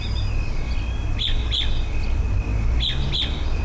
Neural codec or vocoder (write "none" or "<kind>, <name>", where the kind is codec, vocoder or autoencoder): none